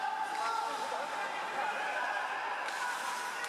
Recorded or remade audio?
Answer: remade